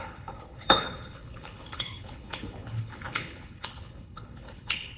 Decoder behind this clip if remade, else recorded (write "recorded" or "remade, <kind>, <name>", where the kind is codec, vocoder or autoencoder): remade, codec, HILCodec